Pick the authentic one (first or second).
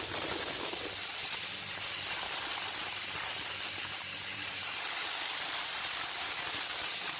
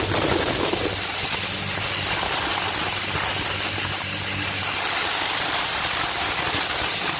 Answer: second